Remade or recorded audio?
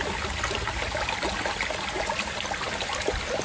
recorded